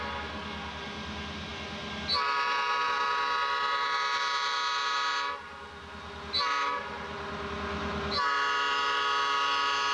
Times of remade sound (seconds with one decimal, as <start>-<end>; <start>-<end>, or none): none